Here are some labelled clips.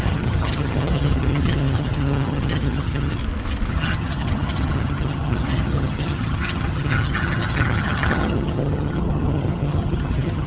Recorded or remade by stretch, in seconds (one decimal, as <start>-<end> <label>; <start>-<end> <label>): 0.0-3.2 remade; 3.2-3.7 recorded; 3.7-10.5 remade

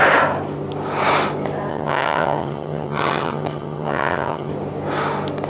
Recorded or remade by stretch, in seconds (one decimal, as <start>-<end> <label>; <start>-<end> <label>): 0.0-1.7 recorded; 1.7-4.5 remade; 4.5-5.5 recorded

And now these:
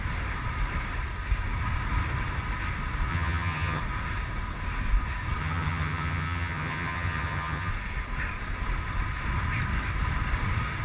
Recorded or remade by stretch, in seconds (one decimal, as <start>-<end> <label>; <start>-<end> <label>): 0.0-3.1 recorded; 3.1-3.8 remade; 3.8-5.4 recorded; 5.4-7.7 remade; 7.7-10.8 recorded

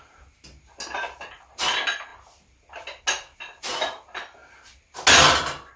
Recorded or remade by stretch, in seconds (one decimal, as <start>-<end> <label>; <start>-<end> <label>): 0.0-5.8 recorded

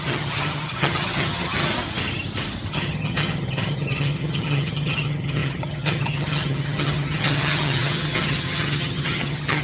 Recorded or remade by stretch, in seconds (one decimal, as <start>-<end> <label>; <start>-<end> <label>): 0.0-1.7 remade; 1.7-2.7 recorded; 2.7-9.6 remade

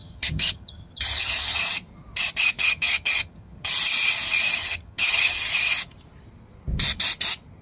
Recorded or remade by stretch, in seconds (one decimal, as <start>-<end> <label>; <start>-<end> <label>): 0.0-1.6 remade; 1.6-2.6 recorded; 2.6-3.7 remade; 3.7-4.6 recorded; 4.6-5.5 remade; 5.5-7.6 recorded

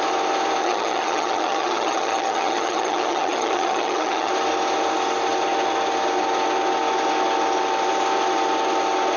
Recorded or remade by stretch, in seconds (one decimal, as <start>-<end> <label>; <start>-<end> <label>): 0.0-0.6 recorded; 0.6-4.3 remade; 4.3-9.2 recorded

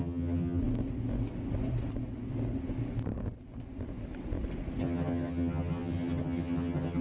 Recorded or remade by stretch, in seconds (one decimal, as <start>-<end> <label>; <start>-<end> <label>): 0.0-0.6 remade; 0.6-4.8 recorded; 4.8-7.0 remade